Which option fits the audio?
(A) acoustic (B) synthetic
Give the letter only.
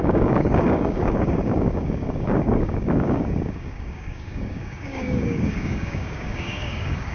B